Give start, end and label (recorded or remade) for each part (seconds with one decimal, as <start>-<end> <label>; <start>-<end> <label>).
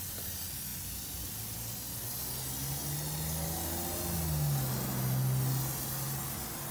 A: 0.0-6.7 recorded